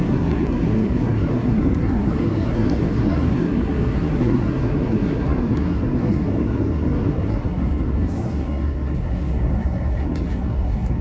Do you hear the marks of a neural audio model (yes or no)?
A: yes